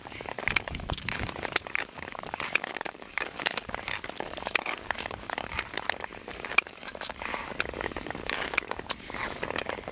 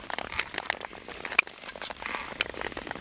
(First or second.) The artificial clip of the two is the first